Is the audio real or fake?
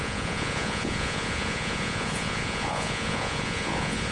fake